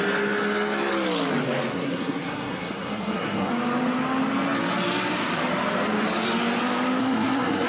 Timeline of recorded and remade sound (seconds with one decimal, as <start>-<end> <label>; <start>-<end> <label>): 0.0-1.7 recorded; 1.7-3.5 remade; 3.5-7.0 recorded; 7.0-7.7 remade